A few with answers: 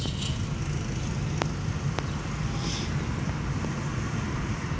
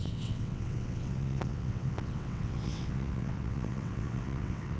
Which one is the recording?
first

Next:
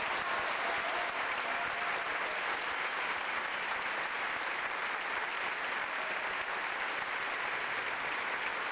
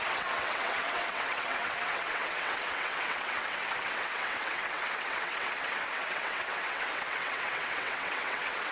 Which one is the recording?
first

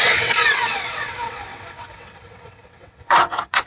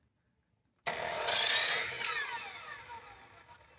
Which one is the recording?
second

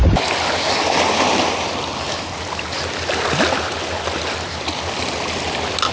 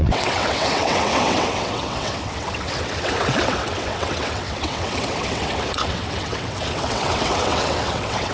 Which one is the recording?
first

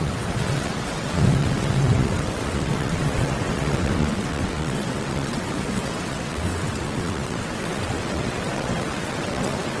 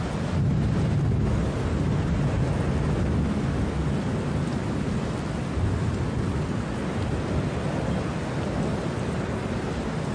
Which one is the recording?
second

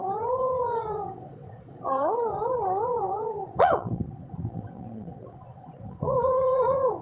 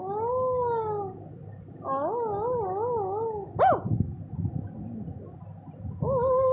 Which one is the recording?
second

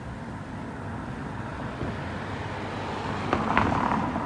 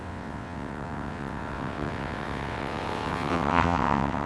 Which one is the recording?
first